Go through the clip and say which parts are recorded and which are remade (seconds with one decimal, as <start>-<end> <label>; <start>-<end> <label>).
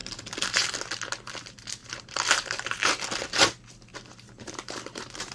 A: 0.0-1.8 recorded; 1.8-3.0 remade; 3.0-3.9 recorded; 3.9-5.3 remade